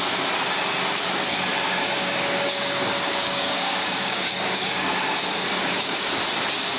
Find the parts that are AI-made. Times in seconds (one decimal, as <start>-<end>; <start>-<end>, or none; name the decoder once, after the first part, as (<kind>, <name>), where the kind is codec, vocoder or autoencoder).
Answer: 1.5-5.0 (codec, DAC); 5.6-6.1